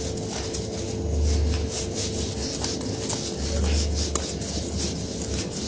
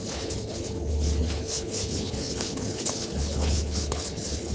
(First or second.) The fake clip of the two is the second